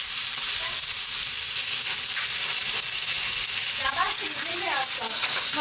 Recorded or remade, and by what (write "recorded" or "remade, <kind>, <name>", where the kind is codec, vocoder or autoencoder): recorded